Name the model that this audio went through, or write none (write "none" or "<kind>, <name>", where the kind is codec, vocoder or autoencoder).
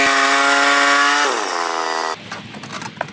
none